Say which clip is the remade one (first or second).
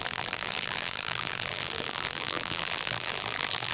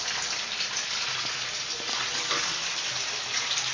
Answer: first